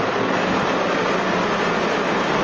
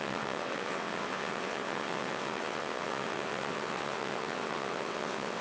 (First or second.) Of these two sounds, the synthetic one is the second